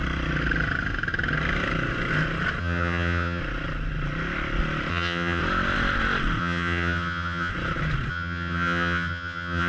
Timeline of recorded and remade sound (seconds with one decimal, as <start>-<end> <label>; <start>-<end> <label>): 0.0-2.6 recorded; 2.6-3.4 remade; 3.4-4.9 recorded; 4.9-5.4 remade; 5.4-6.4 recorded; 6.4-7.5 remade; 7.5-8.1 recorded; 8.1-9.7 remade